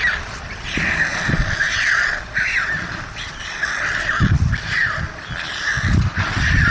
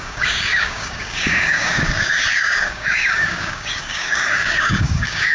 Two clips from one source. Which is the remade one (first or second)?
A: second